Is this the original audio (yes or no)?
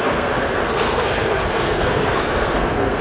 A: no